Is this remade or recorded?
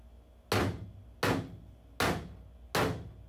recorded